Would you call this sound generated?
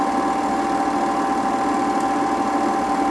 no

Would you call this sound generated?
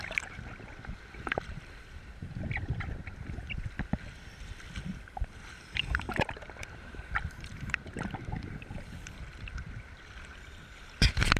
yes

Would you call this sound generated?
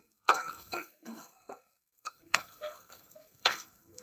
yes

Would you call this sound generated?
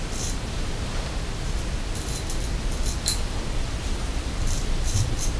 yes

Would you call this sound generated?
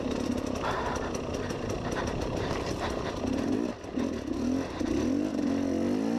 no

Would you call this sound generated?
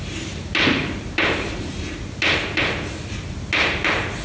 no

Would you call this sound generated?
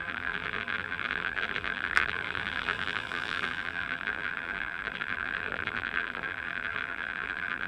yes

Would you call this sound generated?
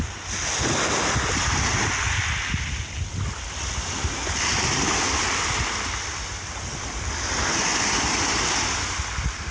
no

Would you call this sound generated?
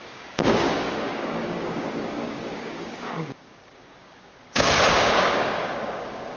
yes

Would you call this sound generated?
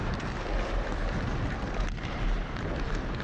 no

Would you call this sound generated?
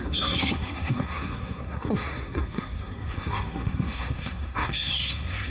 yes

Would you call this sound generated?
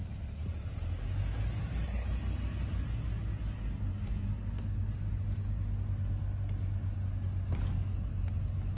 no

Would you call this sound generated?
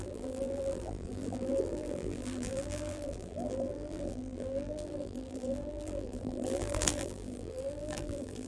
yes